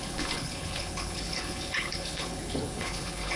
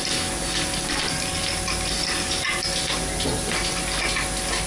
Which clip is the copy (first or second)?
first